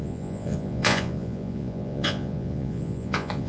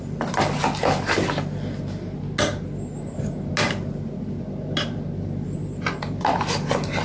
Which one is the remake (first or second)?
first